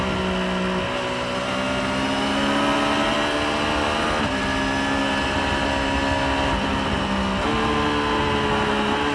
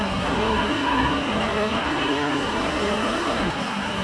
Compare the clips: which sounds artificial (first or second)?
second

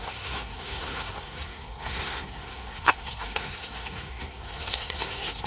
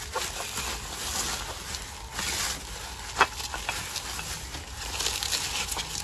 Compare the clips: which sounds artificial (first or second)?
first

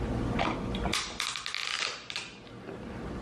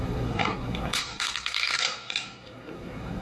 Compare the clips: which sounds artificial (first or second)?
second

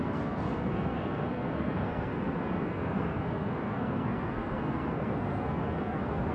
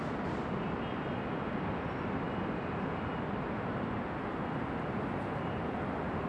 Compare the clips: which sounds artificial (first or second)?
first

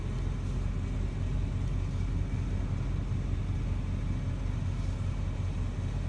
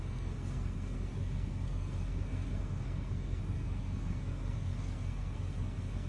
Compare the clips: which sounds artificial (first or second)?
second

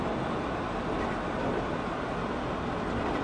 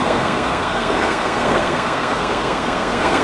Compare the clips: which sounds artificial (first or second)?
second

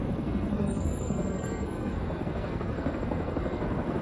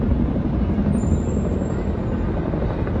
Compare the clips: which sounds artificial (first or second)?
first